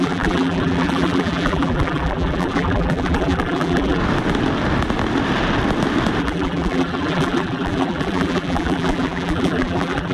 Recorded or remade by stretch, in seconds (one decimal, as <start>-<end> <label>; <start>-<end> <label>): 0.0-4.0 remade; 4.0-6.2 recorded; 6.2-10.1 remade